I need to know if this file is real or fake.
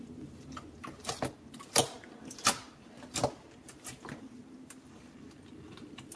real